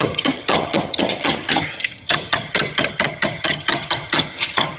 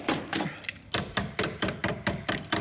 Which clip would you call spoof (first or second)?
first